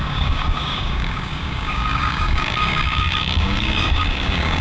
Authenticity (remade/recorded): remade